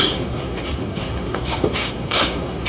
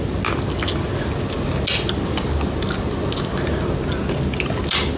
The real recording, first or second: second